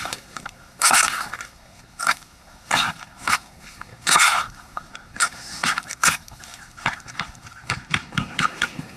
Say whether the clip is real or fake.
fake